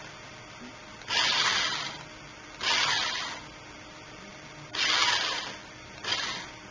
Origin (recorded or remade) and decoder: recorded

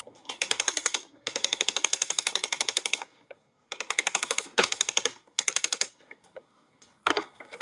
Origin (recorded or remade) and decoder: remade, codec, SNAC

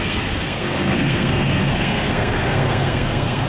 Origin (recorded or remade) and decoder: remade, codec, SNAC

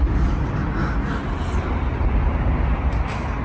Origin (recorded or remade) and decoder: recorded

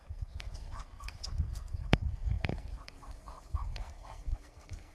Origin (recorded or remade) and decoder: remade, codec, SNAC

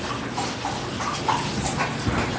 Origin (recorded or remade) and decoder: recorded